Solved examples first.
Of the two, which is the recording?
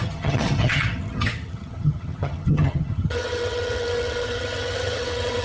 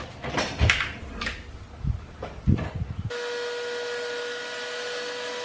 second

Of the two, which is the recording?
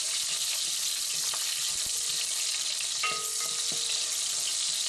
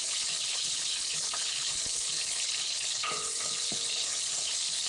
first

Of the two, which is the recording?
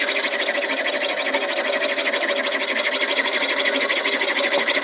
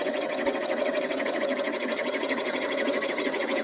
first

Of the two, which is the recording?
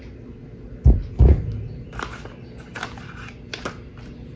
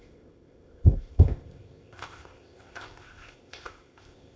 first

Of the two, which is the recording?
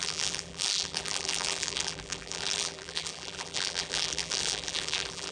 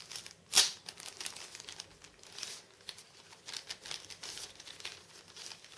second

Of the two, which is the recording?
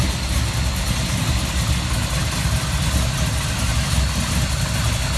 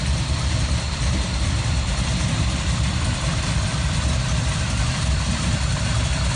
first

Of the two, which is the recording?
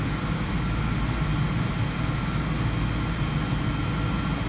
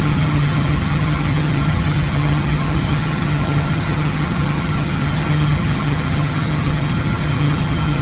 first